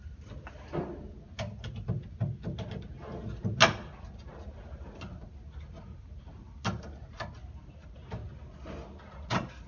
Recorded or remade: recorded